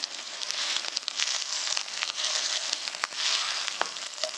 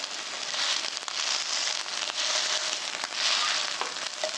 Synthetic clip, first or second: first